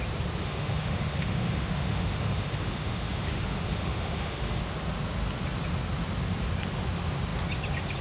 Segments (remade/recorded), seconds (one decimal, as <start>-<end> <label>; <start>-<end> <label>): 0.0-0.4 recorded; 0.4-4.6 remade; 4.6-8.0 recorded

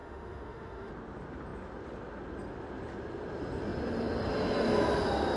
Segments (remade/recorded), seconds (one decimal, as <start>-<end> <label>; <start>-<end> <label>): 0.0-0.9 remade; 0.9-5.4 recorded

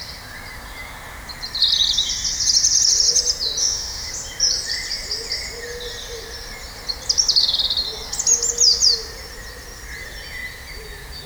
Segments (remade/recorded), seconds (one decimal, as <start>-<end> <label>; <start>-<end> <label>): 0.0-3.6 recorded; 3.6-4.1 remade; 4.1-11.3 recorded

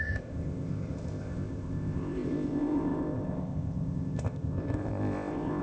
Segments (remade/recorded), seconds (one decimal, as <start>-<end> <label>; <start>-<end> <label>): 0.0-5.6 remade